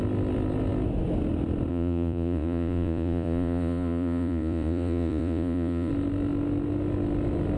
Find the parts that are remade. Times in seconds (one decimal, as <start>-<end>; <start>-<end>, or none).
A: 1.7-5.9